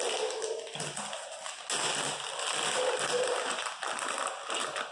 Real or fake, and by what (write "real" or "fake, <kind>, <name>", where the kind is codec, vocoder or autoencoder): real